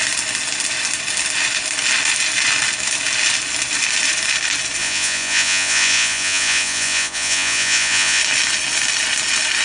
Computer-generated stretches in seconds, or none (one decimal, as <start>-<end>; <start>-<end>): 4.8-8.2